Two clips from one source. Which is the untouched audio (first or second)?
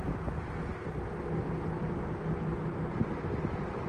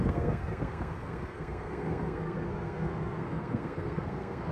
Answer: first